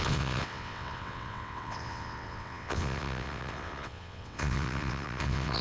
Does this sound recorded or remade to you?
remade